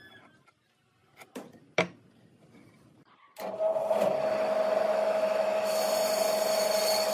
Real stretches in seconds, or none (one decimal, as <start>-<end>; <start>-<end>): 0.0-4.9; 5.8-7.1